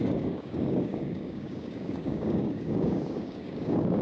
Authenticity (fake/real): fake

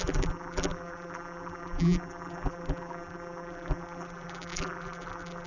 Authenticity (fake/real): fake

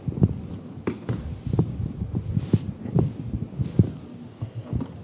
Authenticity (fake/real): real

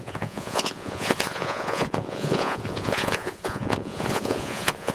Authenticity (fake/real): fake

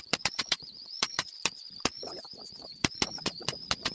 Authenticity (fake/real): fake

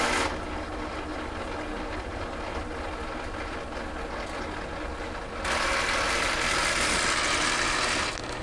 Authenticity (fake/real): real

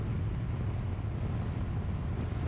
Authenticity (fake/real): real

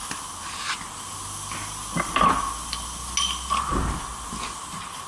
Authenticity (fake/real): real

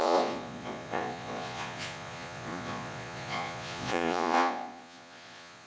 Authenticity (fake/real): fake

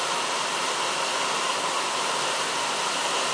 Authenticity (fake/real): real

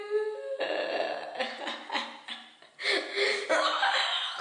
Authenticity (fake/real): real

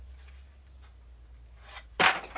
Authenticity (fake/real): real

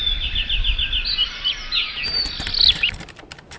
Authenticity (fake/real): real